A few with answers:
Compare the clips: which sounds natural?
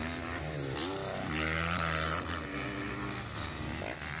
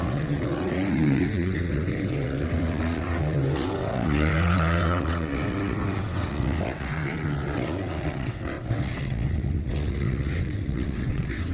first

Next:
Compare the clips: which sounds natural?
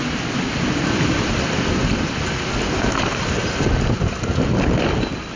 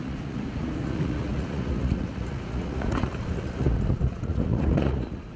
first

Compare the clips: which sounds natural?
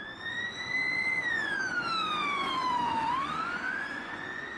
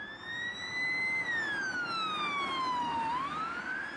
second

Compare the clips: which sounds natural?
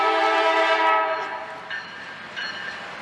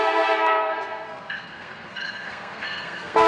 first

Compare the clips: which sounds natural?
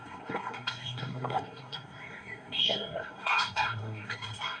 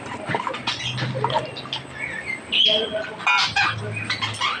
second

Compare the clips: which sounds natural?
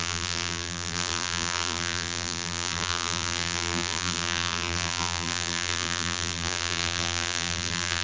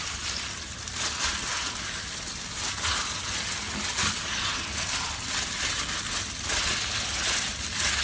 second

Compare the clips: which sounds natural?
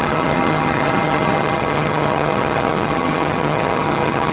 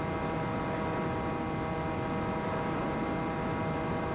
second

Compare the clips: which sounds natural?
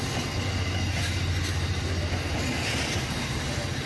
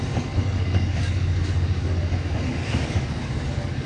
first